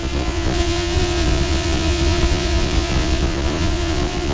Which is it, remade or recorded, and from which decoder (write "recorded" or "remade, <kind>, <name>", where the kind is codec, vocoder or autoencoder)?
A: remade, vocoder, Vocos